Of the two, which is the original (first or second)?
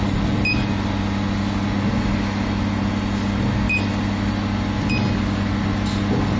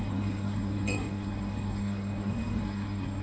first